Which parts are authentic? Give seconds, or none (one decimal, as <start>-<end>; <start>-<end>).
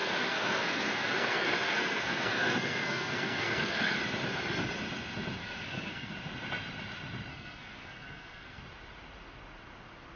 4.0-5.4; 6.1-7.3; 8.6-10.2